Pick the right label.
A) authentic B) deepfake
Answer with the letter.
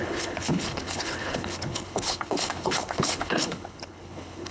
B